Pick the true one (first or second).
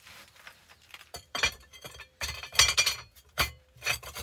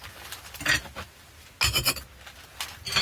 second